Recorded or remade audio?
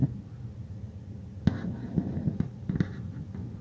recorded